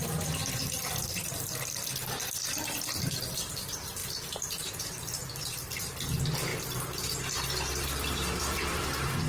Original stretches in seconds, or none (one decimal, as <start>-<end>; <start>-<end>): 0.0-4.0; 4.8-5.2; 5.8-6.5